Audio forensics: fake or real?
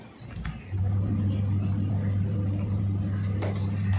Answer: real